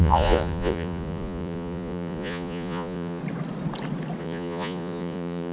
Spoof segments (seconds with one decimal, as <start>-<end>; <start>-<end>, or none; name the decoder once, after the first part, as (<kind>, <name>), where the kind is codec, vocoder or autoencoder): 0.0-3.2 (vocoder, Vocos); 4.2-5.5